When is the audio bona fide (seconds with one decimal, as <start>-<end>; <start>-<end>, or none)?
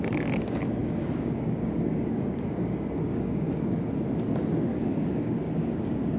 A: 0.0-0.8; 3.9-4.7